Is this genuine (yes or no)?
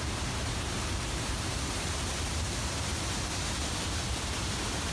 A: no